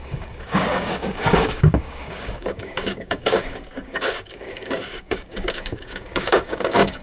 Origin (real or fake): fake